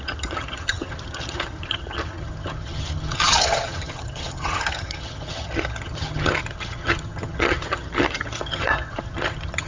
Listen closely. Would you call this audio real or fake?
fake